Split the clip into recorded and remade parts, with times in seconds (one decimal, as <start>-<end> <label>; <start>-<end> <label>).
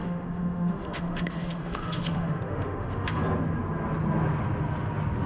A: 0.0-3.2 remade; 3.2-5.3 recorded